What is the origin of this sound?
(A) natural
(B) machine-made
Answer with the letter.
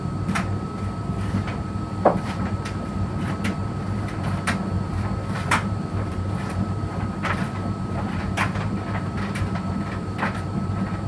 B